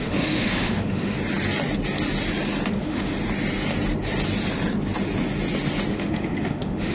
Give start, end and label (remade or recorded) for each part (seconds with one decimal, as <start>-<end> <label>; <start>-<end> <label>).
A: 0.0-1.2 remade; 1.2-2.7 recorded; 2.7-3.1 remade; 3.1-5.9 recorded; 5.9-6.9 remade